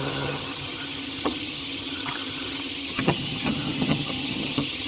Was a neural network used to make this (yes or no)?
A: yes